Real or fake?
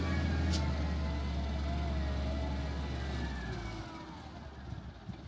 real